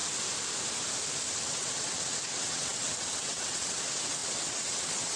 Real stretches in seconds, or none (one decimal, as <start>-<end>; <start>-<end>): 0.0-1.4

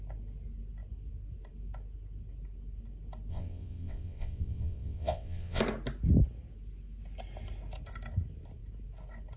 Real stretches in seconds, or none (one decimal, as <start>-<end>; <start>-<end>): 0.0-3.3; 5.6-9.4

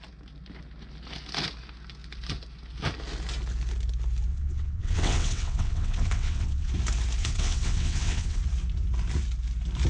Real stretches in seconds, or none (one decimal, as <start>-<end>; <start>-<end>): 0.0-4.3; 6.7-7.2; 8.4-9.9

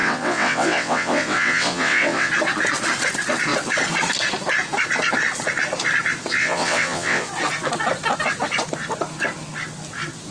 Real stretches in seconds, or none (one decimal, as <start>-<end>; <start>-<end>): 2.3-6.4; 7.3-10.3

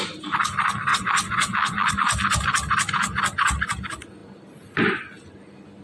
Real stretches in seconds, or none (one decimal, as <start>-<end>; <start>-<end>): 0.0-0.9; 1.9-5.8